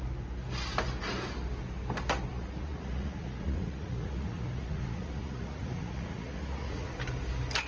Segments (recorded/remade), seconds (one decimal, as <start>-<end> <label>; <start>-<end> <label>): 0.0-2.3 recorded; 2.3-6.9 remade; 6.9-7.7 recorded